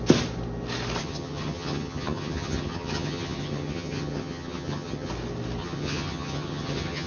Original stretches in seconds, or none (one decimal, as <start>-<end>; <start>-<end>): 0.0-1.0; 5.1-5.6